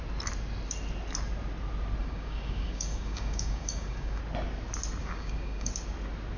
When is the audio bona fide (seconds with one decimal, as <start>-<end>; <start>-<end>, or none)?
0.0-2.0; 4.2-5.0; 5.7-6.4